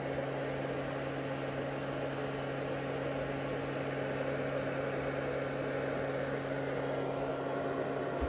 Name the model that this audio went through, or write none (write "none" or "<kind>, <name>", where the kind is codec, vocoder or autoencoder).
none